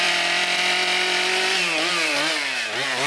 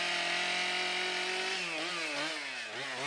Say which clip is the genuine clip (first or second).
second